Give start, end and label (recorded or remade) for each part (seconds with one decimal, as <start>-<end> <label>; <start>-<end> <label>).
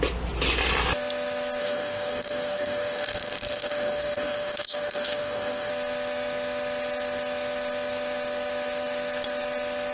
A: 0.0-1.6 recorded; 1.6-5.7 remade; 5.7-9.9 recorded